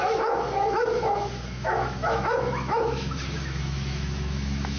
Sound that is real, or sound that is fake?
fake